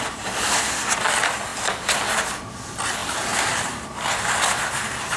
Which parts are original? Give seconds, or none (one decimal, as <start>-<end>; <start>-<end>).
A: 0.0-1.5; 2.3-3.0; 4.2-5.2